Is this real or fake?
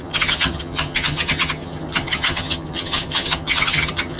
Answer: fake